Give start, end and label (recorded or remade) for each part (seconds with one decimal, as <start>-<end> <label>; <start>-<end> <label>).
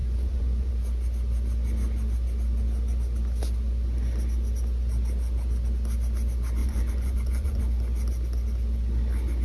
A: 0.0-0.7 remade; 0.7-6.6 recorded; 6.6-7.6 remade; 7.6-9.4 recorded